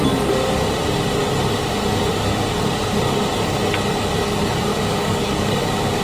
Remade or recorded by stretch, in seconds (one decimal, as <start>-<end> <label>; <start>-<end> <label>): 0.0-4.7 recorded; 4.7-6.0 remade